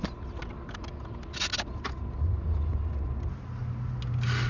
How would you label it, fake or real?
real